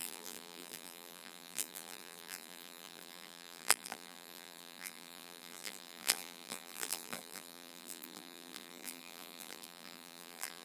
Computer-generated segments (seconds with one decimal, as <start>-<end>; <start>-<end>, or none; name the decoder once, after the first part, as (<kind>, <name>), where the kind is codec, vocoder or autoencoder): 0.0-10.6 (vocoder, BigVGAN v2)